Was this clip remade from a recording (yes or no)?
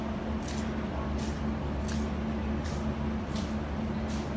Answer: no